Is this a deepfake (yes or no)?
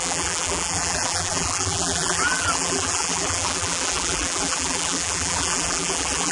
yes